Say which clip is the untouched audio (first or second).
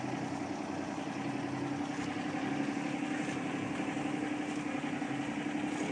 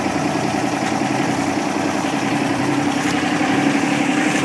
first